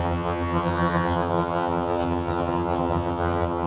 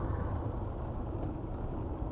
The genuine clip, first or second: second